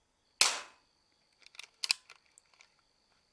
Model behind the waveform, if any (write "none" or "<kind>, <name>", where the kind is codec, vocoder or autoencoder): none